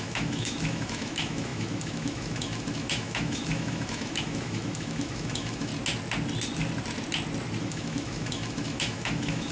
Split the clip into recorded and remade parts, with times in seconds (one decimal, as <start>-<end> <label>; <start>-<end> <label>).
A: 0.0-5.7 remade; 5.7-7.6 recorded; 7.6-9.5 remade